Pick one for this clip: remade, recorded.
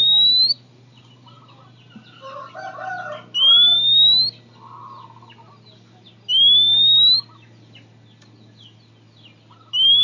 recorded